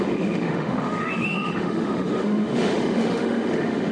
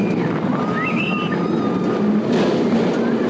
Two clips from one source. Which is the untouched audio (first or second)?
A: second